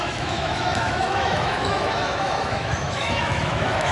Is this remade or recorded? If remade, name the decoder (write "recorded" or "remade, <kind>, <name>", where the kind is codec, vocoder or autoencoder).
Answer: remade, autoencoder, DAC-VAE